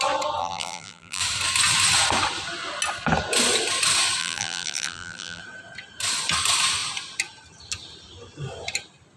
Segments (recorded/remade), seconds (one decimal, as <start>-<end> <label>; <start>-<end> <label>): 0.0-0.4 recorded; 0.4-1.2 remade; 1.2-4.2 recorded; 4.2-5.4 remade; 5.4-9.2 recorded